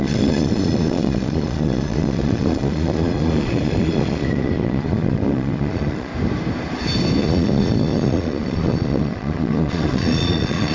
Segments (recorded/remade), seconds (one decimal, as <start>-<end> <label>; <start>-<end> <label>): 0.0-6.1 remade; 6.1-7.2 recorded; 7.2-10.7 remade